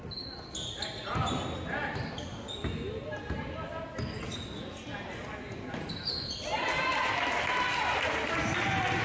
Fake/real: real